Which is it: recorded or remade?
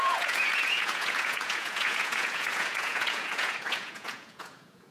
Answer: remade